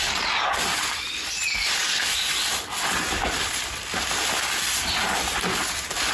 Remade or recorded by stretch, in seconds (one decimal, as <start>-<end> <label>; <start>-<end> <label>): 0.0-6.1 remade